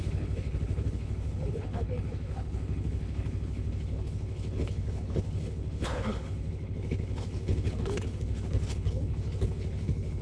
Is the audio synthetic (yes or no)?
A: yes